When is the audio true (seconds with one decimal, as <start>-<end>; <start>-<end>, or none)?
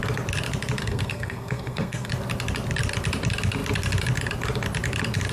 0.0-0.8; 2.1-5.3